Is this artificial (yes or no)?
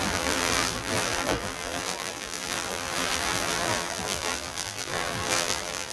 yes